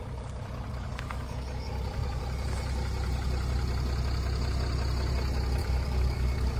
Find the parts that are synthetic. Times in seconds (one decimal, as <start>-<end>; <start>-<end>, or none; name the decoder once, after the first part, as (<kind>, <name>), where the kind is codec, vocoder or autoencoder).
0.7-2.2 (codec, DAC); 5.6-6.6